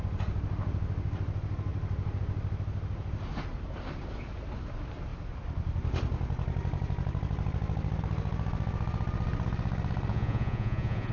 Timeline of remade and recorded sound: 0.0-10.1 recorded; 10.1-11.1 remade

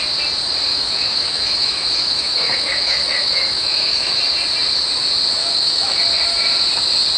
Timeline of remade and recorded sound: 0.0-0.7 recorded; 0.7-4.2 remade; 4.2-5.4 recorded; 5.4-6.0 remade; 6.0-7.2 recorded

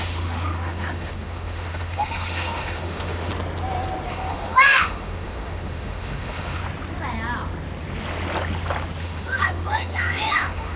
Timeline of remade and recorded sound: 0.0-3.3 remade; 3.3-4.1 recorded; 4.1-6.6 remade; 6.6-9.0 recorded; 9.0-10.8 remade